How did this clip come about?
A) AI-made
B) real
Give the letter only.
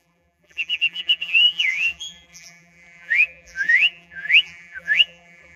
A